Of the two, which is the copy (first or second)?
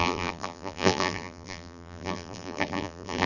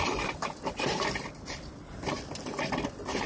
first